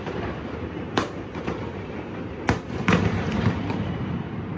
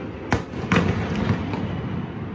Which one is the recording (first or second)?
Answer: second